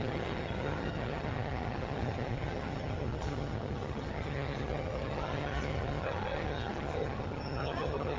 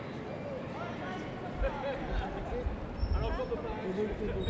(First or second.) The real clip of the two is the second